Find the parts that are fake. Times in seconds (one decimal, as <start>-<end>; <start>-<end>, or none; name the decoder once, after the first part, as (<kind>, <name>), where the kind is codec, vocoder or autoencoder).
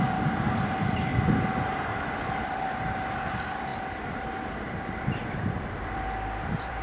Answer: 0.0-1.1 (vocoder, BigVGAN v2); 1.7-6.8